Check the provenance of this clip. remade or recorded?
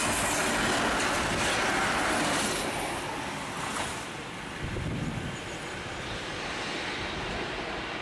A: recorded